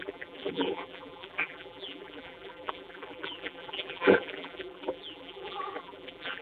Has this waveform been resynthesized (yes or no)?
yes